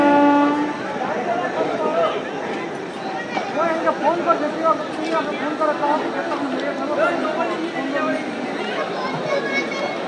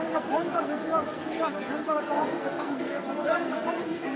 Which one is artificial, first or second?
second